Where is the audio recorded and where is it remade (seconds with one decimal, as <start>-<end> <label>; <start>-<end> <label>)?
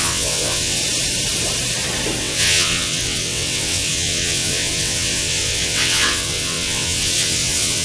0.0-0.8 remade; 0.8-2.2 recorded; 2.2-7.8 remade